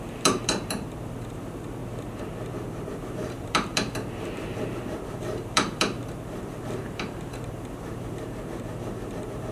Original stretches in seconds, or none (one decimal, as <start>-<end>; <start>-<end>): 1.8-2.9